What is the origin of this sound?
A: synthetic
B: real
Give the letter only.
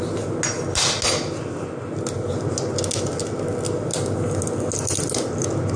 B